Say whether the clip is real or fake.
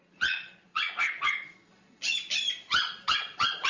fake